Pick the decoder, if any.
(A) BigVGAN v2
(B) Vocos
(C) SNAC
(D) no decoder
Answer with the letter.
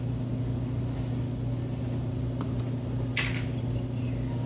D